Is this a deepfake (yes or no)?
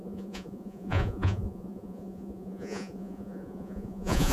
yes